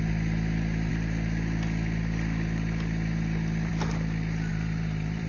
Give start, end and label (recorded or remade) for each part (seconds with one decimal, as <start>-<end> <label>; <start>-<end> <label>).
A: 0.0-4.5 recorded; 4.5-5.3 remade